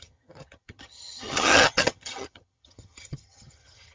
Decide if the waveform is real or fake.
fake